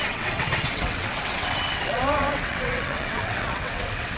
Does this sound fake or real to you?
fake